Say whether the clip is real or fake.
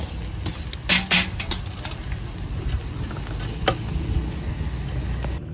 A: real